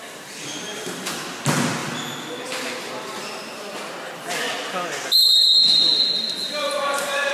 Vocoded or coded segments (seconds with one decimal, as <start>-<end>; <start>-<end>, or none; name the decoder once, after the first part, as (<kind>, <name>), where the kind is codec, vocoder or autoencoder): none